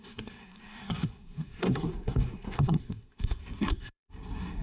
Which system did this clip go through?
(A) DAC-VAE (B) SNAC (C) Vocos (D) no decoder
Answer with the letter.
B